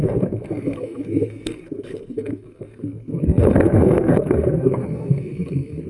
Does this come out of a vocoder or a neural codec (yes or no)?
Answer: yes